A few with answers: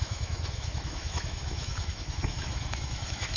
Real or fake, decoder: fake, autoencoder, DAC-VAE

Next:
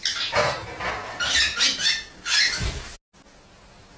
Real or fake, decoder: real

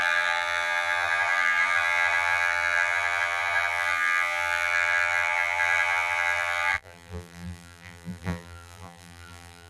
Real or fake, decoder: fake, vocoder, BigVGAN v2